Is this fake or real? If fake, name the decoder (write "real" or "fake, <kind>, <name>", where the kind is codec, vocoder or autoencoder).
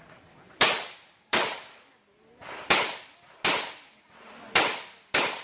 real